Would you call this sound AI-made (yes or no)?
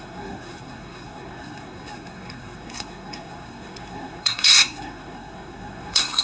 yes